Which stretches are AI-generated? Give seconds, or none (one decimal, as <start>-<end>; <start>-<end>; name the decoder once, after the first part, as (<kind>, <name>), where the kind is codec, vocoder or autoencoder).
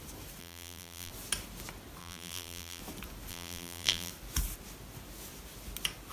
0.4-1.1 (vocoder, BigVGAN v2); 2.0-2.8; 3.3-4.1